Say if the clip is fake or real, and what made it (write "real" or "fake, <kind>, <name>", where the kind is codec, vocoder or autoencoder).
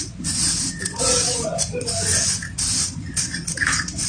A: fake, vocoder, BigVGAN v2